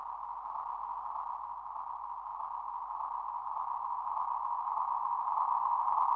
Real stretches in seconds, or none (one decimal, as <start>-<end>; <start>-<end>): 0.0-6.2